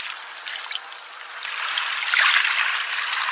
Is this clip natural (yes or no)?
yes